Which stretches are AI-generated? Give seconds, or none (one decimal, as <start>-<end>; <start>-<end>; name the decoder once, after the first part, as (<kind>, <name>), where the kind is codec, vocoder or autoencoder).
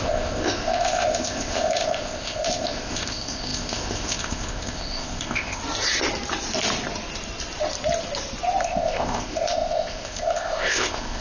0.0-5.6 (codec, ZipCodec); 8.6-11.2